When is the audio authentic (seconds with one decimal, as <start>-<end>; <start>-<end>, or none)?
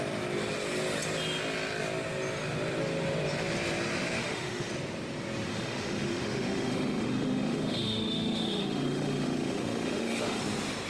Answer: 0.0-4.2; 4.7-5.5; 10.4-10.9